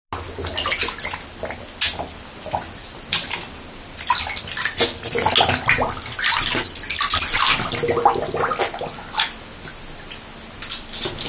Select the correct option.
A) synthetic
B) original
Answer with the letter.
B